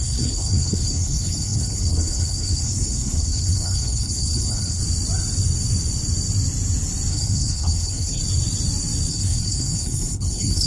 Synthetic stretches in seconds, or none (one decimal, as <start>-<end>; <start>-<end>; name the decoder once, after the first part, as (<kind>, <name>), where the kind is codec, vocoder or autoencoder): 0.0-4.8 (codec, HILCodec); 7.1-8.2; 9.1-10.7